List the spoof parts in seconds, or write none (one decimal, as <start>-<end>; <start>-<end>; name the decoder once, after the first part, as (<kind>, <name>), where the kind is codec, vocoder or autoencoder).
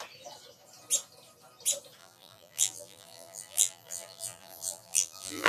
2.0-5.5 (vocoder, BigVGAN v2)